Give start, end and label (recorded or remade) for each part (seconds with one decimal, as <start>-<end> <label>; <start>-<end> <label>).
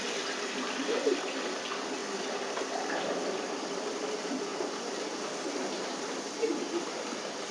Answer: 0.0-2.0 remade; 2.0-3.0 recorded; 3.0-4.5 remade; 4.5-6.6 recorded; 6.6-7.5 remade